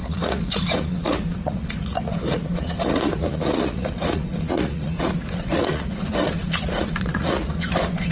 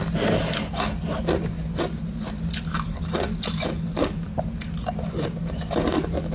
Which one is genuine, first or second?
second